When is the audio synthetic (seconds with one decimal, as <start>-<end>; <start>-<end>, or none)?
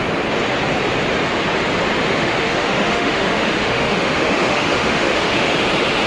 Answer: 2.0-5.5